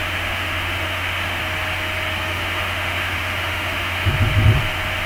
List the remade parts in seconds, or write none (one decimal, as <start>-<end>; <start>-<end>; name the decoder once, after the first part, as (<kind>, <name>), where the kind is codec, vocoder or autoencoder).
0.0-1.4 (autoencoder, DAC-VAE); 2.3-4.1